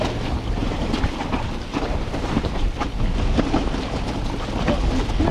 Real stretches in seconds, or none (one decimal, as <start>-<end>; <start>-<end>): 0.0-0.6; 3.1-5.3